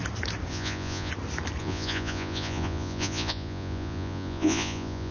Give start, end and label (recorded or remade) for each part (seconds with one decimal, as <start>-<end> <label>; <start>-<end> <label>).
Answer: 0.0-0.5 recorded; 0.5-1.1 remade; 1.1-1.6 recorded; 1.6-5.1 remade